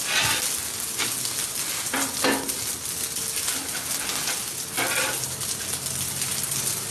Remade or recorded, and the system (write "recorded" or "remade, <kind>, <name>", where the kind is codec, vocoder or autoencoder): recorded